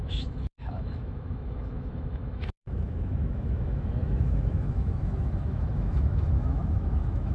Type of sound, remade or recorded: remade